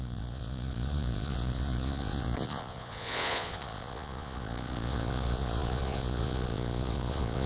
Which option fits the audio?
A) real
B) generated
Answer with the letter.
B